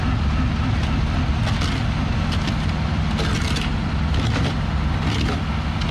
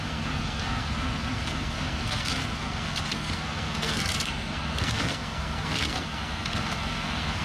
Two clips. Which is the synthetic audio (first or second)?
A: second